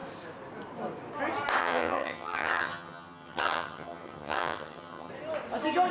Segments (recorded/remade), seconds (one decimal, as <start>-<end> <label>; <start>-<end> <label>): 0.0-1.6 recorded; 1.6-5.1 remade; 5.1-5.9 recorded